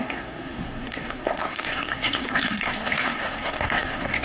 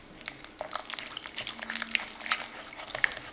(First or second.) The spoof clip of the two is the first